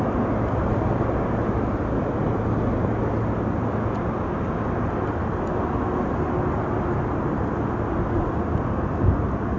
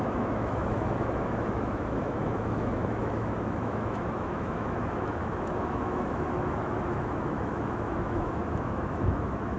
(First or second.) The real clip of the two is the first